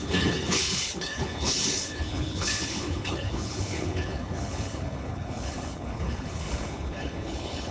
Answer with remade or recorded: remade